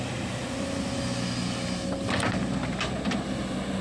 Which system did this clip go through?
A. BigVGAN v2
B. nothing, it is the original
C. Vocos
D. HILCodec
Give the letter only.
B